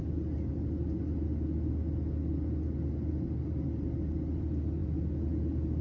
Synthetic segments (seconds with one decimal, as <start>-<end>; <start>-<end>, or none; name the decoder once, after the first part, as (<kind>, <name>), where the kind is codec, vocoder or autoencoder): none

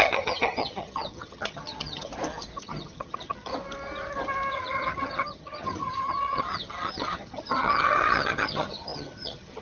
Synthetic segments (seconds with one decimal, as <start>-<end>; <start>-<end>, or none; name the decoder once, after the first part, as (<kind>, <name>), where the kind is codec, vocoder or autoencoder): 0.0-2.1 (vocoder, HiFi-GAN); 2.6-3.5; 4.5-9.6

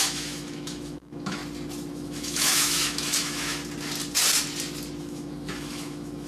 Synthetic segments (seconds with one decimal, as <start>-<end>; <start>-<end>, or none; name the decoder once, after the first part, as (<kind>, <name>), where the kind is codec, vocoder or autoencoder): 0.0-1.4 (autoencoder, DAC-VAE); 1.9-3.6; 5.0-6.3

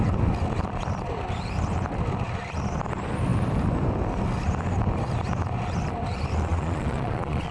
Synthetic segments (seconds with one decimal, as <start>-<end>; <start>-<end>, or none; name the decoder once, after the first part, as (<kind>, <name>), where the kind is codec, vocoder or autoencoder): 6.5-7.5 (vocoder, Vocos)

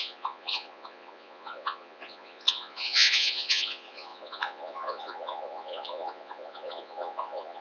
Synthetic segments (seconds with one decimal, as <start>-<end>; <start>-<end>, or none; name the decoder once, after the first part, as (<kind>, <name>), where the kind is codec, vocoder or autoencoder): 0.0-7.6 (vocoder, Vocos)

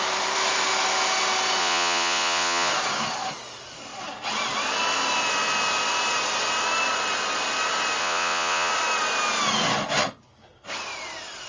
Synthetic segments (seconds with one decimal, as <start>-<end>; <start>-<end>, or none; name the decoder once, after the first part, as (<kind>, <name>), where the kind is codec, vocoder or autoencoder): 1.6-2.7 (vocoder, Vocos); 8.0-8.7

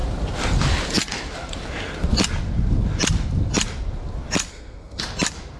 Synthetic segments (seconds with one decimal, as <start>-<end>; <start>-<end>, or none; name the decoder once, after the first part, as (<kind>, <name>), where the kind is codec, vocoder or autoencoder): 4.5-5.0 (codec, SNAC)

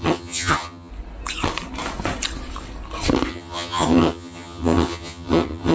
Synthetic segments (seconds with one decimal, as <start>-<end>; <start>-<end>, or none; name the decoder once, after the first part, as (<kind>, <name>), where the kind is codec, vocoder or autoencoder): 0.0-0.9 (vocoder, HiFi-GAN); 3.3-5.7